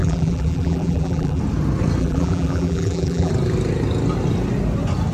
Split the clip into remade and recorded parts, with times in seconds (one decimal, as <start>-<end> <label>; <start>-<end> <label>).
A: 0.0-1.4 remade; 1.4-2.0 recorded; 2.0-3.3 remade; 3.3-5.1 recorded